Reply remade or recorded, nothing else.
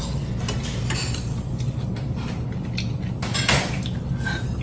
recorded